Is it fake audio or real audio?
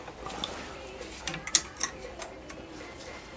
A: real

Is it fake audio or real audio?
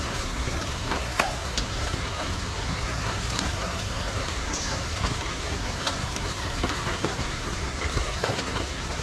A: fake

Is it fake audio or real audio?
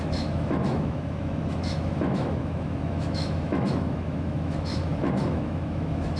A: fake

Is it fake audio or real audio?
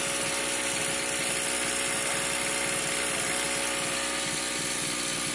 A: real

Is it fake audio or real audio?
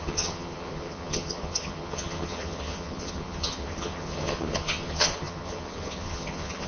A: fake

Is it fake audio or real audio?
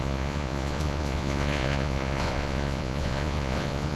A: fake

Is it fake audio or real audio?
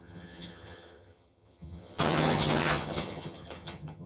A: fake